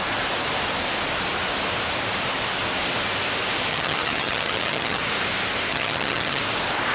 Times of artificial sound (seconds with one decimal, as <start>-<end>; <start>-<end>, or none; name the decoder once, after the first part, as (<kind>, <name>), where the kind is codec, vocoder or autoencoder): 3.7-5.0 (vocoder, HiFi-GAN); 5.7-6.4